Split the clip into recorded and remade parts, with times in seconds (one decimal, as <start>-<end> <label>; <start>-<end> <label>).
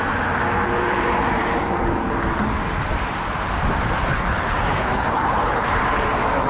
0.0-4.1 recorded; 4.1-5.7 remade; 5.7-6.5 recorded